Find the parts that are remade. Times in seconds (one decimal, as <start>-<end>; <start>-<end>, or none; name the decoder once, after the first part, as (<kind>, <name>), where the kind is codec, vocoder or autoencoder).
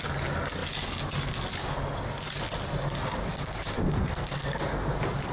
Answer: 3.8-4.6 (codec, SNAC)